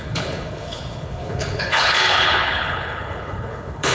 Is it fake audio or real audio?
fake